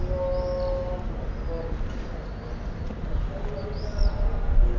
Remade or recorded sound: recorded